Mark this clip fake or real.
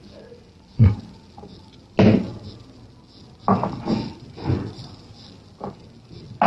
real